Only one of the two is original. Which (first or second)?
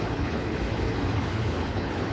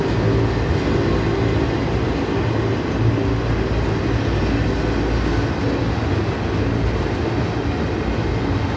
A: second